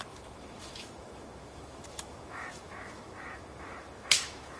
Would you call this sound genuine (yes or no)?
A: no